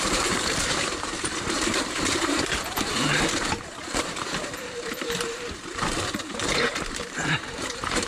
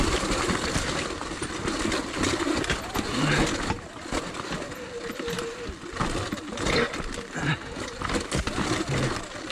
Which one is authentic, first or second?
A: second